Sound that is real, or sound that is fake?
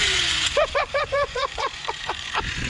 fake